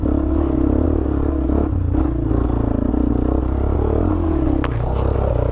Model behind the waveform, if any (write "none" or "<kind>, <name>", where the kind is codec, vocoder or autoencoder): none